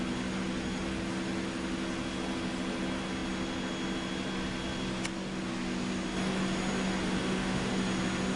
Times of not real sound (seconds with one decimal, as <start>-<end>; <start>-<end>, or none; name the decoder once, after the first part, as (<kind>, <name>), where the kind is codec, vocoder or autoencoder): 7.2-7.7 (autoencoder, DAC-VAE)